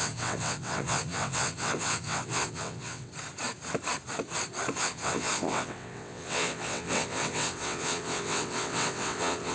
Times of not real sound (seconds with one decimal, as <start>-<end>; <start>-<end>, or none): 0.0-3.1; 4.8-9.5